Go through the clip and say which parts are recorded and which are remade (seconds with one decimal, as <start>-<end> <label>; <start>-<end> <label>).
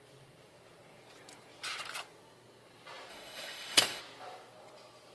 0.0-3.1 recorded; 3.1-4.0 remade; 4.0-5.1 recorded